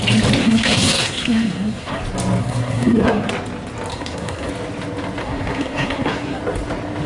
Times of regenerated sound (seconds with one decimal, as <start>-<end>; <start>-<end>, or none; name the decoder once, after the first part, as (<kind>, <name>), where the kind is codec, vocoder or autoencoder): 0.4-2.0 (codec, SNAC); 2.4-3.3; 3.9-4.5; 5.2-6.4